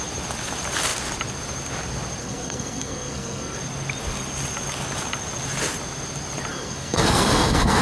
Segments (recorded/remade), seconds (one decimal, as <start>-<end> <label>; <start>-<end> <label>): 0.0-2.2 recorded; 2.2-3.6 remade; 3.6-6.5 recorded; 6.5-7.8 remade